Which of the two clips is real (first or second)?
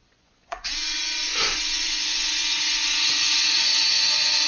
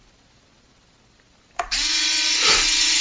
second